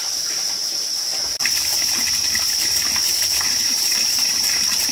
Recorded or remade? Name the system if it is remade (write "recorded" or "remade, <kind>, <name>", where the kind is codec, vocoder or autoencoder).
remade, vocoder, BigVGAN v2